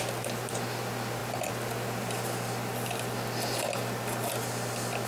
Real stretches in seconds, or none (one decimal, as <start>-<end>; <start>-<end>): 0.0-5.1